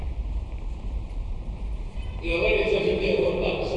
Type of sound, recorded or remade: remade